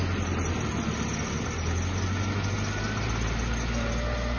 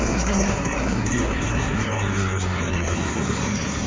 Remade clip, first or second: second